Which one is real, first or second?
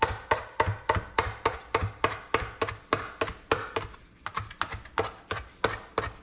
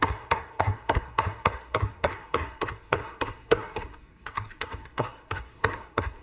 first